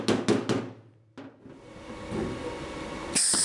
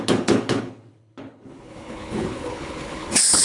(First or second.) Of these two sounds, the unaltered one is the first